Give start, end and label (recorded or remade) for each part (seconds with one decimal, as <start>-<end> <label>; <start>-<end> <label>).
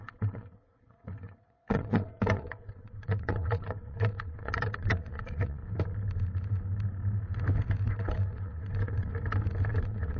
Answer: 0.0-5.6 remade; 5.6-8.0 recorded; 8.0-9.1 remade; 9.1-9.7 recorded; 9.7-10.2 remade